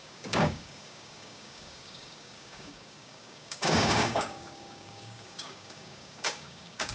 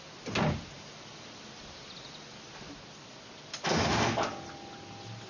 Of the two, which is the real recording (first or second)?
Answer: second